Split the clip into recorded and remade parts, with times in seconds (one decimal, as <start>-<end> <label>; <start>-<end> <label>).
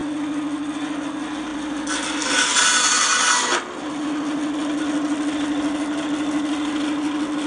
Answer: 0.0-7.5 recorded